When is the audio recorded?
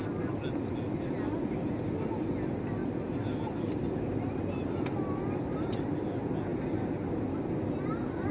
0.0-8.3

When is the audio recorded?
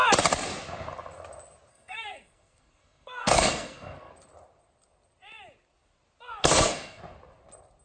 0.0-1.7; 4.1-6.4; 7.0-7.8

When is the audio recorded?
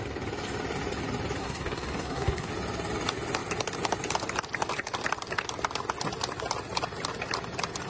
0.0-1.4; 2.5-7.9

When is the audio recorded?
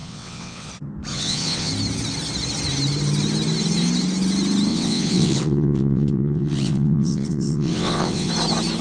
0.7-1.1; 1.7-4.7; 8.3-8.8